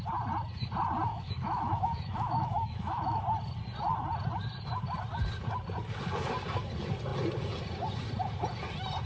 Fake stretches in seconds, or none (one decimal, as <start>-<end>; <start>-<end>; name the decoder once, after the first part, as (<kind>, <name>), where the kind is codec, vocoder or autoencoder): 1.1-3.2 (autoencoder, DAC-VAE)